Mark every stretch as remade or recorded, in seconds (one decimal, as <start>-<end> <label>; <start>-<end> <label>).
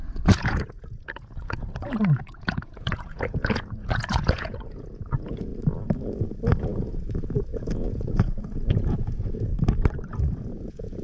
0.0-5.5 remade; 5.5-6.6 recorded; 6.6-9.5 remade; 9.5-10.2 recorded; 10.2-11.0 remade